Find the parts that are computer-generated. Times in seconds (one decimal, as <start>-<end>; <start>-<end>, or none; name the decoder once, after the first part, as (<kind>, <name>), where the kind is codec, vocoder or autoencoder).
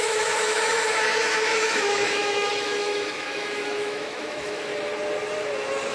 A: 0.0-4.7 (autoencoder, DAC-VAE)